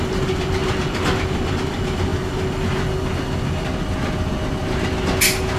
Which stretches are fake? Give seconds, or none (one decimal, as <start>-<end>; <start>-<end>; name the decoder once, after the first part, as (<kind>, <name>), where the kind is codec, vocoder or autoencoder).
none

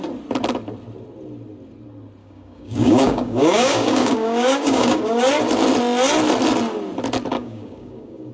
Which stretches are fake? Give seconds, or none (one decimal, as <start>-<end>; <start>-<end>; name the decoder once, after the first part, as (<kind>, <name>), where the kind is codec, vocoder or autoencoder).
2.2-5.3 (codec, DAC); 7.3-8.3

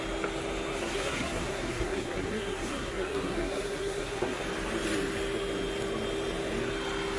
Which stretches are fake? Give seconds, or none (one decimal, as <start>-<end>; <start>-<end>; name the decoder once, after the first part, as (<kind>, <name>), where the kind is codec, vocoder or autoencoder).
0.8-4.4 (codec, SNAC)

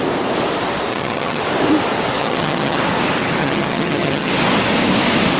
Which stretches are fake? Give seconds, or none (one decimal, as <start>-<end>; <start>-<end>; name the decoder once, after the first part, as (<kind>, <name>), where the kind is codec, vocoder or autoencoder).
0.9-1.4 (vocoder, HiFi-GAN); 2.2-2.8; 3.4-4.3